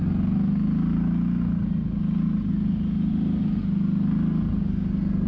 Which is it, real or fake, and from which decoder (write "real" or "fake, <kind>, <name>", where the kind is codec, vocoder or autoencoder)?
real